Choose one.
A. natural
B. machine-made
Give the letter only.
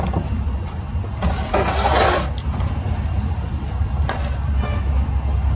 A